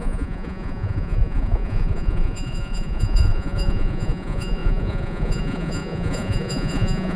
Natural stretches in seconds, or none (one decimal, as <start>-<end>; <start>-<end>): none